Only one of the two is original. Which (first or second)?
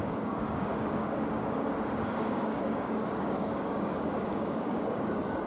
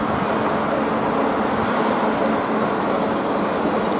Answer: second